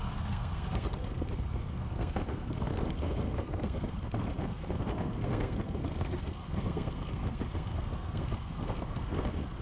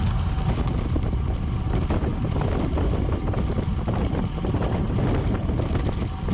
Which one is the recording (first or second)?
second